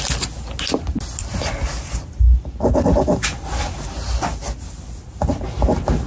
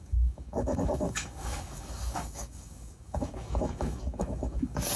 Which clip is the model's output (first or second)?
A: second